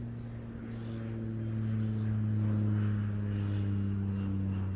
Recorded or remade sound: recorded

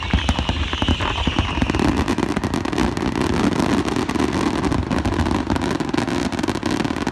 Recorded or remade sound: recorded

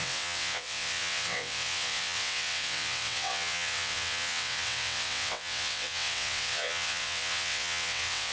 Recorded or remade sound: remade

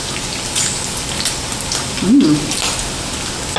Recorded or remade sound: recorded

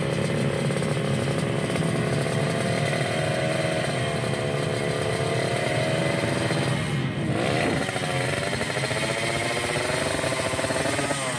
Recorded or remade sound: recorded